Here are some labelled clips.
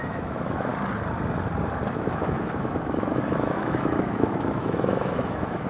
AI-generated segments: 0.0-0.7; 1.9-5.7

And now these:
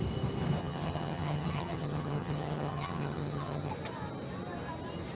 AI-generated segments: 0.6-3.7

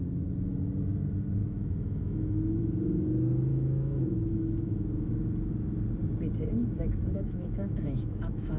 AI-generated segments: 1.4-2.6; 3.5-5.1; 6.6-8.6

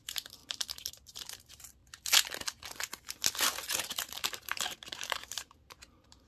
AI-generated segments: 0.0-0.4; 0.9-1.8; 3.9-6.3

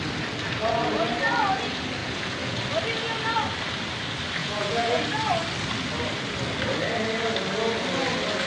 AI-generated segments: 2.0-2.6; 4.4-5.0